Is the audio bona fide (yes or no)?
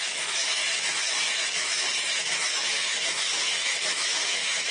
no